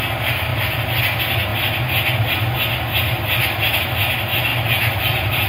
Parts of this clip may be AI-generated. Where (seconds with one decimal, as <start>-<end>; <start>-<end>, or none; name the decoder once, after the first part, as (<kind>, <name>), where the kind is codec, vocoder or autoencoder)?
0.5-1.0 (vocoder, BigVGAN v2); 4.5-5.5